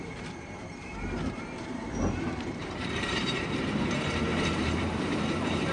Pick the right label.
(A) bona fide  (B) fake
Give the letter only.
B